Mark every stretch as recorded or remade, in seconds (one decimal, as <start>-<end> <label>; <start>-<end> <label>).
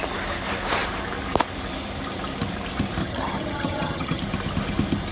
0.0-3.0 recorded; 3.0-4.2 remade; 4.2-5.1 recorded